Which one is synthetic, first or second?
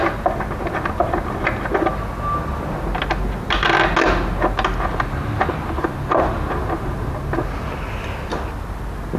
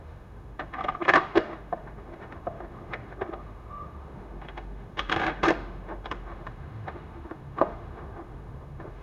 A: second